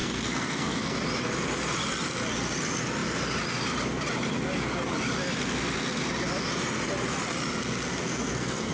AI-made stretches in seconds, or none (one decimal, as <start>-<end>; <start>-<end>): 0.0-1.0; 8.0-8.7